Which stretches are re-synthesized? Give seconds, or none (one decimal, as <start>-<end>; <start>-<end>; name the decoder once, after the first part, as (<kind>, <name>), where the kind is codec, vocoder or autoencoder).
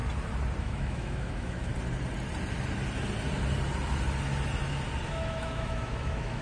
0.6-1.7 (autoencoder, DAC-VAE); 5.1-6.4